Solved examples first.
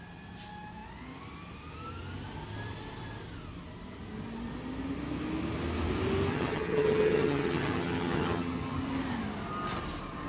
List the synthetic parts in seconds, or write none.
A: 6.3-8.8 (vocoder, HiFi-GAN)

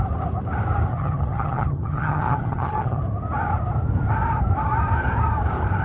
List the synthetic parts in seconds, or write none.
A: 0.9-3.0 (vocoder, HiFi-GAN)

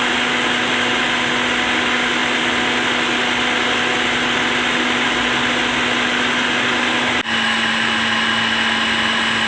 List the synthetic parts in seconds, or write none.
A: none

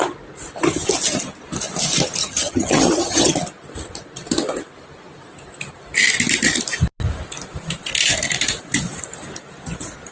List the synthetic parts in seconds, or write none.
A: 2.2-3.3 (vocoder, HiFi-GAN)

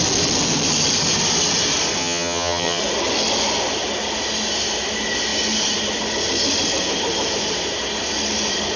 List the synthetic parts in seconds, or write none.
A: 2.0-2.8 (vocoder, HiFi-GAN)

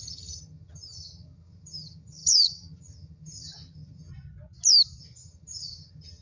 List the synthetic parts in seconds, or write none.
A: 0.0-4.1 (vocoder, HiFi-GAN); 5.0-6.2